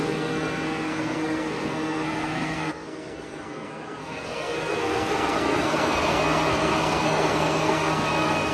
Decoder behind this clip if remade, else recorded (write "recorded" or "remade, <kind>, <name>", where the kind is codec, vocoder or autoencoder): remade, codec, SNAC